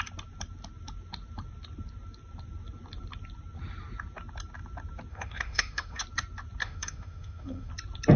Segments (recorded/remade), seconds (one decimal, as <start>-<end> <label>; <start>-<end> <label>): 0.0-5.1 recorded; 5.1-6.0 remade; 6.0-6.6 recorded; 6.6-7.7 remade; 7.7-8.2 recorded